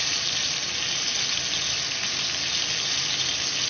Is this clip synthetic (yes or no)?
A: no